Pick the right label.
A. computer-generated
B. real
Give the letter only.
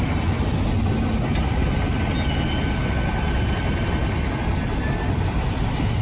B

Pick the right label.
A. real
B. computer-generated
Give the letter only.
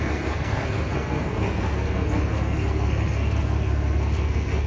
B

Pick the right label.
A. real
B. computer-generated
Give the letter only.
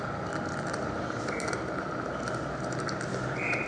A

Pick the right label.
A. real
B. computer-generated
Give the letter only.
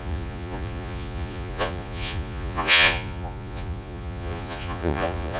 B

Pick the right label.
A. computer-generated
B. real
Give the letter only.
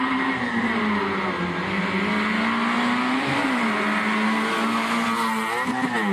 B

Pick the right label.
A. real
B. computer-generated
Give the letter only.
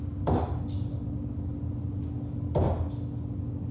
A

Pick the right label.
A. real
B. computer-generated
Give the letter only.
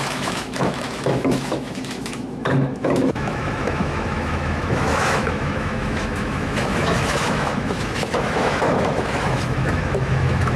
B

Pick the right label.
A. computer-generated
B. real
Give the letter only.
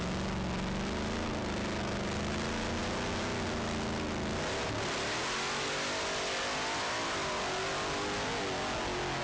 B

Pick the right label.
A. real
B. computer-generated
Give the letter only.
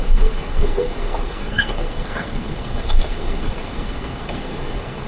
B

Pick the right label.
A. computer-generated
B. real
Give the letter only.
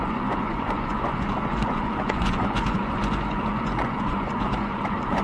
A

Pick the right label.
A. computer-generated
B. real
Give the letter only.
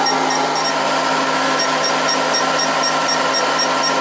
B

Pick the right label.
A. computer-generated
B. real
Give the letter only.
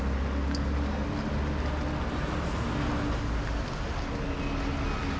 B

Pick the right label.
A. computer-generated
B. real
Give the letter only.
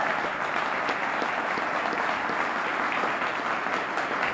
B